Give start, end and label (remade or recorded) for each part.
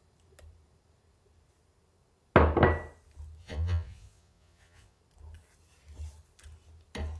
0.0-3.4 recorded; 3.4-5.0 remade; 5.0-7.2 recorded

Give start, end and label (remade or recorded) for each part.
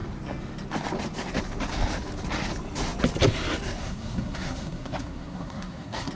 0.0-3.8 recorded; 3.8-6.1 remade